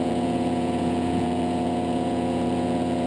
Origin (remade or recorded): remade